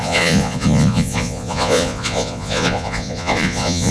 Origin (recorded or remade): remade